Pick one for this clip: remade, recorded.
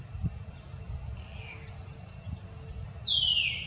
recorded